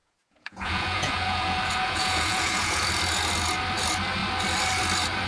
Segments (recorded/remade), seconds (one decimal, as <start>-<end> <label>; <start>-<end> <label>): 0.0-2.8 remade; 2.8-5.3 recorded